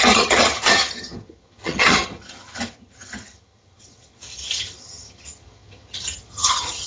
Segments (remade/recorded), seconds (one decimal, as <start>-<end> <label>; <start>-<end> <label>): 0.0-6.9 remade